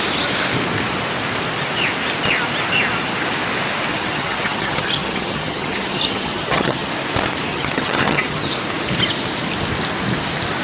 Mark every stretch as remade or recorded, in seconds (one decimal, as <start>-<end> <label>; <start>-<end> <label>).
0.0-3.9 recorded; 3.9-6.9 remade; 6.9-7.5 recorded; 7.5-8.5 remade; 8.5-10.6 recorded